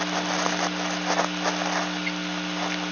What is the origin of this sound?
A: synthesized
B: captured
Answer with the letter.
B